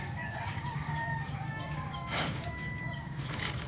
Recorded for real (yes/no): no